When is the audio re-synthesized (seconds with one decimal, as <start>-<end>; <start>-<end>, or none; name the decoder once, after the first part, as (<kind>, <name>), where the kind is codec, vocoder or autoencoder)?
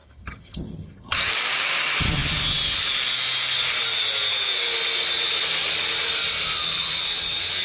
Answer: 0.0-1.3 (vocoder, HiFi-GAN)